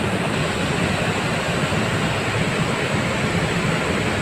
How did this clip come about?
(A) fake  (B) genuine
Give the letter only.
B